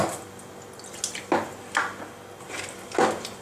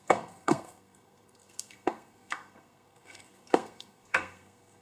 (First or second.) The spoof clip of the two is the second